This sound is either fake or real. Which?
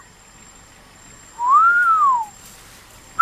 real